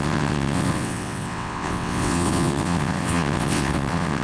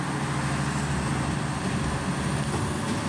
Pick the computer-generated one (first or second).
first